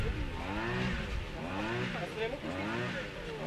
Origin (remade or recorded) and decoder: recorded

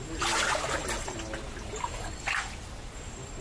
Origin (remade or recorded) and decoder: recorded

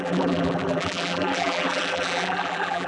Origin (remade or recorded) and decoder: remade, vocoder, BigVGAN v2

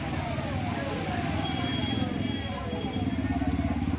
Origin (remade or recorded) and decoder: recorded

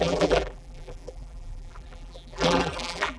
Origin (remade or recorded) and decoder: remade, vocoder, BigVGAN v2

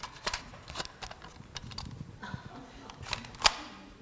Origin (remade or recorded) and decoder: recorded